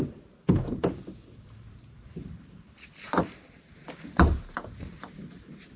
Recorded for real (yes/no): no